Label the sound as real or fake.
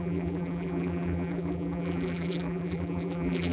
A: fake